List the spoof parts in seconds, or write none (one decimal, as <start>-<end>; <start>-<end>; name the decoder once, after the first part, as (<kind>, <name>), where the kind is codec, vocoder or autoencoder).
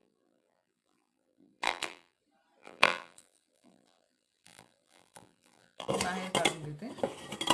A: 0.0-2.2 (vocoder, BigVGAN v2); 2.6-5.9